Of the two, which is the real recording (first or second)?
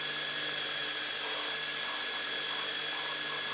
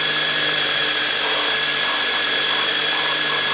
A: first